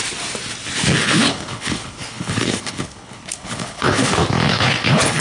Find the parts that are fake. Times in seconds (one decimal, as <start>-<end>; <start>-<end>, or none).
1.0-4.1; 4.5-5.2